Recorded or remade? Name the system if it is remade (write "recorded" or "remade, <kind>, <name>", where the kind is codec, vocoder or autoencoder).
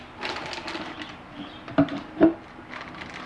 recorded